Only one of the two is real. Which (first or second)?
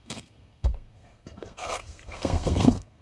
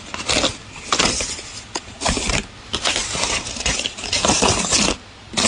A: second